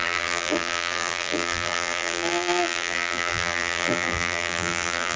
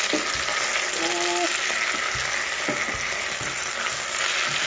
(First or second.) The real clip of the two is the second